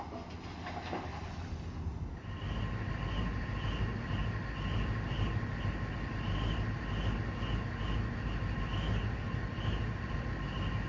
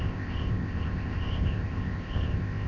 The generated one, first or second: second